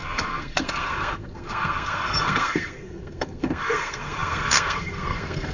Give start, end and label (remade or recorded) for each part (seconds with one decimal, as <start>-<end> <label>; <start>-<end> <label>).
0.0-5.5 remade